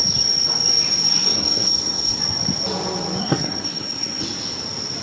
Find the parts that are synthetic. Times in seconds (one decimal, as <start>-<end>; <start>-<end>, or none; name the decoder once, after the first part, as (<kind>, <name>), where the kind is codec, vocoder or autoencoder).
1.1-2.2 (codec, SNAC); 3.2-4.2